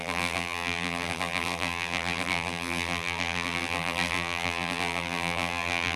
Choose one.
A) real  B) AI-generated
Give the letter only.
B